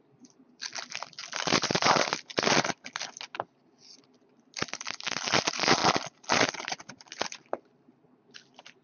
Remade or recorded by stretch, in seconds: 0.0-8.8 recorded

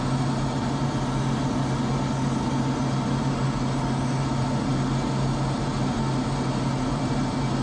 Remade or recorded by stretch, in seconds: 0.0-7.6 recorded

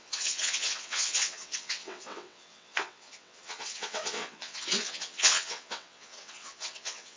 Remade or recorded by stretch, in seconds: 0.0-7.2 remade

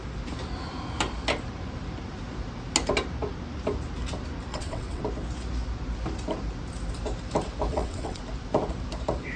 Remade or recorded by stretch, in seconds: 0.0-4.5 recorded; 4.5-5.0 remade; 5.0-7.7 recorded; 7.7-8.2 remade; 8.2-9.4 recorded

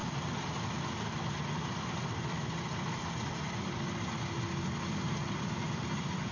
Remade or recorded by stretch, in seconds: 0.0-6.3 recorded

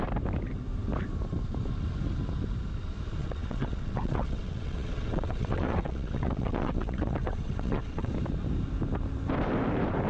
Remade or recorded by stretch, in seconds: 0.0-3.2 recorded; 3.2-8.1 remade; 8.1-10.1 recorded

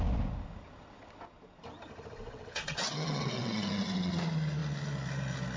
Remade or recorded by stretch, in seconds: 0.0-2.2 recorded; 2.2-4.1 remade; 4.1-5.6 recorded

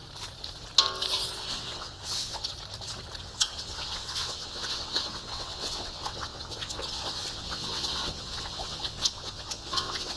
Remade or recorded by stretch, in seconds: 0.0-1.5 recorded; 1.5-2.5 remade; 2.5-3.2 recorded; 3.2-10.2 remade